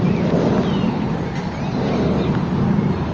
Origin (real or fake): real